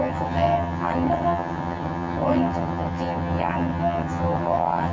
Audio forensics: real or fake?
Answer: fake